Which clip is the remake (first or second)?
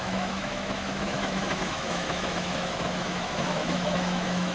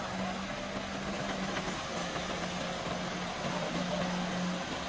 first